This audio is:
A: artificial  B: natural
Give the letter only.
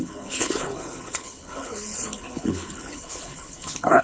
A